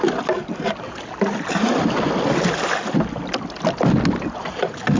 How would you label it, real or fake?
real